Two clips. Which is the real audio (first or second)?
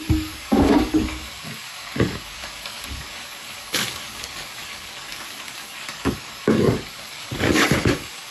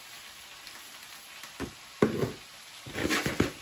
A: second